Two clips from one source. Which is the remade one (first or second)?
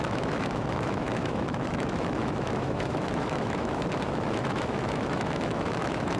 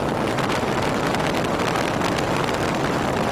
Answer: first